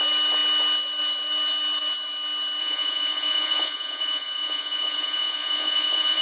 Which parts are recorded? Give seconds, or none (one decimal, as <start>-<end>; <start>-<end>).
0.0-2.6

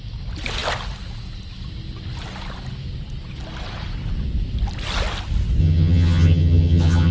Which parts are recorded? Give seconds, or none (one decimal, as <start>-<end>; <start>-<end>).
0.0-5.6

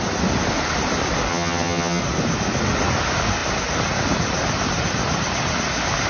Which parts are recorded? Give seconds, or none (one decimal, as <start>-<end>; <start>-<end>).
0.0-1.3; 2.0-6.1

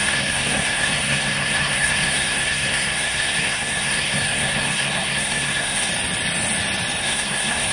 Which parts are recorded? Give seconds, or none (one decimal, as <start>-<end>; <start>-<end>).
5.9-7.0

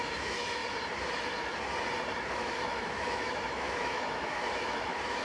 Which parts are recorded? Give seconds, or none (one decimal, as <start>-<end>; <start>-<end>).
0.6-2.3

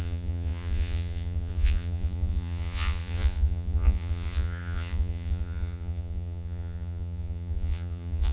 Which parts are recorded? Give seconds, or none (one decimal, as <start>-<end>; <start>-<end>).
none

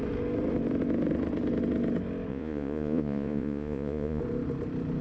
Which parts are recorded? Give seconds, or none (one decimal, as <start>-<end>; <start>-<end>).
0.0-2.3; 4.2-5.0